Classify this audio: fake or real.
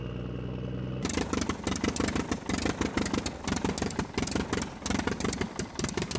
real